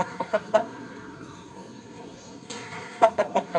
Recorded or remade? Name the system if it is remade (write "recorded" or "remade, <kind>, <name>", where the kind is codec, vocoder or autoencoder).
remade, codec, SNAC